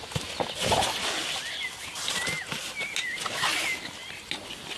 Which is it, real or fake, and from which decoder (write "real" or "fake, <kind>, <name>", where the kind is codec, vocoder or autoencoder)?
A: real